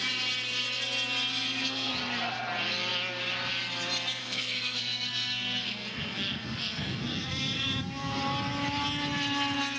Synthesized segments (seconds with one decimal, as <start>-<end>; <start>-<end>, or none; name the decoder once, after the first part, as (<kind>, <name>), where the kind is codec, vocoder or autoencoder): 1.3-1.9 (codec, SNAC); 4.2-8.2